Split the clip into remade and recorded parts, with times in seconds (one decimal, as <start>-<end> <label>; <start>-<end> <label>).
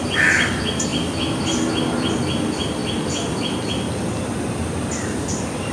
0.0-5.7 recorded